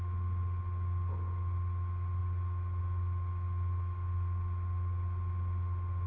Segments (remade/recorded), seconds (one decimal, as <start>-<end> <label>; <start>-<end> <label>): 0.0-6.1 recorded